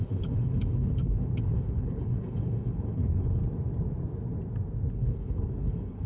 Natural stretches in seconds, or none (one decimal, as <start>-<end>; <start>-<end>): 3.4-4.9